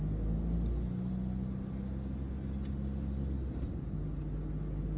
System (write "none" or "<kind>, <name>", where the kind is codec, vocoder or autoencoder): none